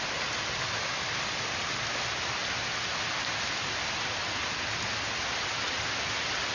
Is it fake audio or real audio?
real